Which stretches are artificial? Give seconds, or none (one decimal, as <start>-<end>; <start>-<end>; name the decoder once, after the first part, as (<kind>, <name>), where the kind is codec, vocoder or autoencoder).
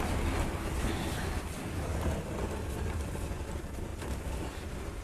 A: 3.9-5.0 (vocoder, BigVGAN v2)